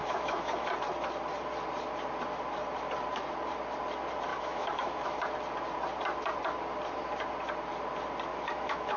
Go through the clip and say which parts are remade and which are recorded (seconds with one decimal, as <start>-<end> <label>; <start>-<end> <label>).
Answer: 0.0-0.7 remade; 0.7-4.3 recorded; 4.3-5.2 remade; 5.2-8.3 recorded; 8.3-9.0 remade